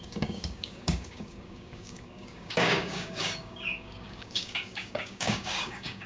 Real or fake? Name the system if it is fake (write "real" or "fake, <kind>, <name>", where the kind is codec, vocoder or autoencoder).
fake, codec, DAC